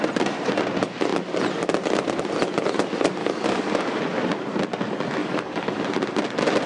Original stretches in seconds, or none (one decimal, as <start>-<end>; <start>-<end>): 0.0-3.2; 4.0-5.2; 5.8-6.7